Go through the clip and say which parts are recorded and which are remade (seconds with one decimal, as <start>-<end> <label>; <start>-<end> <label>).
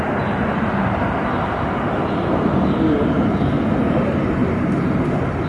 0.0-4.4 recorded; 4.4-5.1 remade; 5.1-5.5 recorded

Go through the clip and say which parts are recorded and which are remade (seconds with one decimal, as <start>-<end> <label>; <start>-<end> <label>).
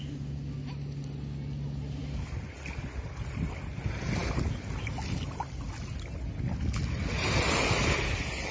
0.0-8.5 recorded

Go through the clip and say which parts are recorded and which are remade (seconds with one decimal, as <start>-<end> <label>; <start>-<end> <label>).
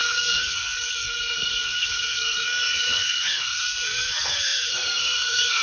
0.0-5.6 remade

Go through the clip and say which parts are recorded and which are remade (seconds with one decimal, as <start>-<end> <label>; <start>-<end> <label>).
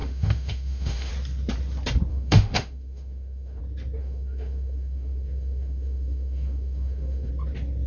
0.0-1.1 remade; 1.1-2.1 recorded; 2.1-3.6 remade; 3.6-4.0 recorded; 4.0-7.3 remade; 7.3-7.9 recorded